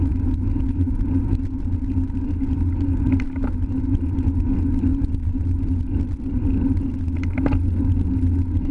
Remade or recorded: recorded